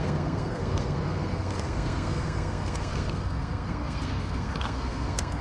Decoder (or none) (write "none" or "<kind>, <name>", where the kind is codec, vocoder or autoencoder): codec, SNAC